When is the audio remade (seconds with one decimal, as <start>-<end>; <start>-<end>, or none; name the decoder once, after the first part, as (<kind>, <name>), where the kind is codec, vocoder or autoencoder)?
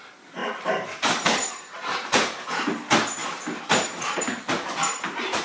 0.0-5.4 (vocoder, BigVGAN v2)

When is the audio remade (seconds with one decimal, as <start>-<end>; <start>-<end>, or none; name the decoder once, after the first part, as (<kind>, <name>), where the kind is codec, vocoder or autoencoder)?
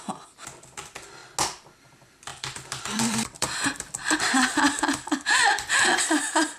2.3-6.0 (vocoder, BigVGAN v2)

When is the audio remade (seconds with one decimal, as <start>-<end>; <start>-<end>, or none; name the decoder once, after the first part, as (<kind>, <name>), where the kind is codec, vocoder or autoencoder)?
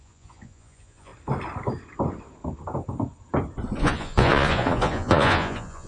0.0-1.1 (vocoder, Vocos); 3.8-5.9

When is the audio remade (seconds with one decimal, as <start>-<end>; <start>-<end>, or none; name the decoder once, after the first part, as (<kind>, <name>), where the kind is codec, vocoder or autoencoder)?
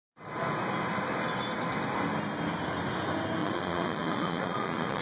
3.4-5.0 (vocoder, Vocos)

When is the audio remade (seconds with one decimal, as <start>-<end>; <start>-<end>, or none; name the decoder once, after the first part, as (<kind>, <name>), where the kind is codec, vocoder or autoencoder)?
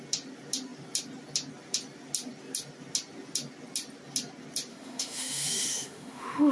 4.7-6.5 (autoencoder, DAC-VAE)